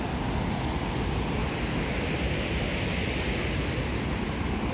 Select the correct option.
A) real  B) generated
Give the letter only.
A